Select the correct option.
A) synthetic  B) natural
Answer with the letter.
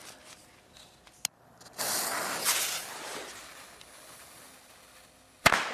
B